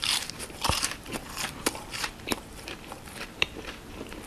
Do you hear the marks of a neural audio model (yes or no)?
yes